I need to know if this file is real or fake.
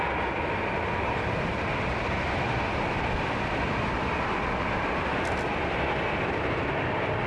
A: real